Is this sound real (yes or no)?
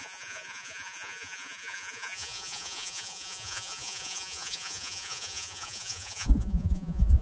no